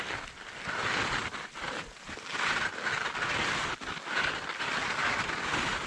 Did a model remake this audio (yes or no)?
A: no